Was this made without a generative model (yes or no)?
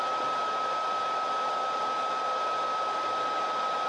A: yes